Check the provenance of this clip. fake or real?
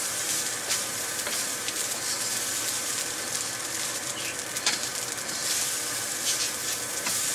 fake